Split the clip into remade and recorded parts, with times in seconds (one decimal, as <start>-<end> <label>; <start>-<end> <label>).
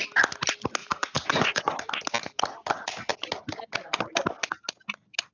0.0-0.8 recorded; 0.8-1.8 remade; 1.8-5.3 recorded